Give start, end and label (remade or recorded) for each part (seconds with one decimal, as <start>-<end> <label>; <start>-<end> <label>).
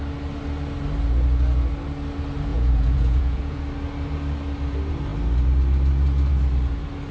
0.0-2.5 recorded; 2.5-3.6 remade; 3.6-7.1 recorded